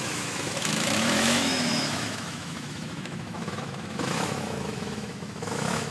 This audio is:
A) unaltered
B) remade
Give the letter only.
B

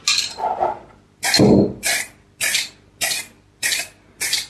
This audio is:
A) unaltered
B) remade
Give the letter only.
A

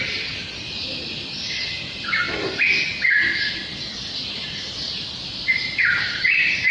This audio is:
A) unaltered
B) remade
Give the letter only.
A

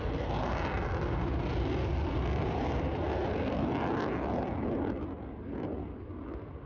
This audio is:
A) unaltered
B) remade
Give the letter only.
A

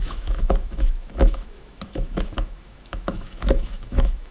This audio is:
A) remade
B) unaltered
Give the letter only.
A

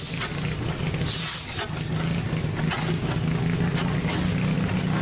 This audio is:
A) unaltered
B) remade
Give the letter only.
A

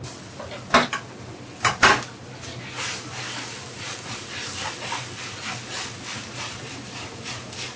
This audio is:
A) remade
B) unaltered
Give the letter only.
B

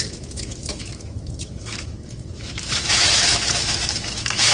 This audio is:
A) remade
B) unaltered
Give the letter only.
A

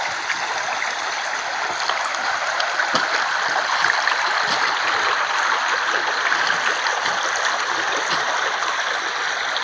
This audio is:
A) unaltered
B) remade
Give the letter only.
A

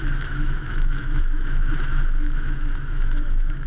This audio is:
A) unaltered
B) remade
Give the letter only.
B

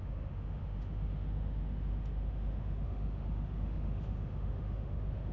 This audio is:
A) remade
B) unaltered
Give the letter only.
A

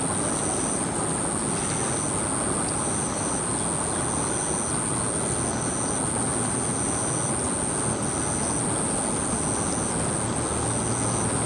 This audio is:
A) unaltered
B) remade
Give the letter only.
A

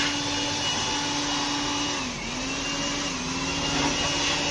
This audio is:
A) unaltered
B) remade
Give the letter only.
A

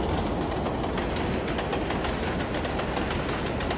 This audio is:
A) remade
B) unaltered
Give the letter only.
B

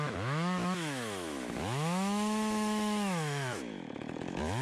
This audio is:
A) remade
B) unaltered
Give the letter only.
A